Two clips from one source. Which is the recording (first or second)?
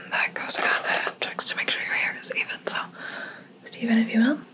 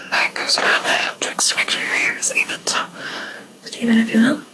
first